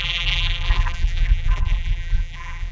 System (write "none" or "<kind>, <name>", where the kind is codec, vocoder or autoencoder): vocoder, BigVGAN v2